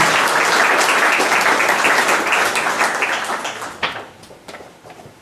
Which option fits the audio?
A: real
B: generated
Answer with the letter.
A